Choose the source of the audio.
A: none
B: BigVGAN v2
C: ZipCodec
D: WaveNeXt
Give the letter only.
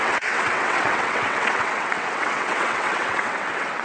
D